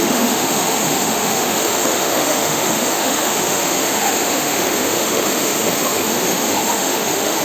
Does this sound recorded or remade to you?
remade